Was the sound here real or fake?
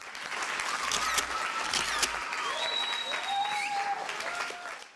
real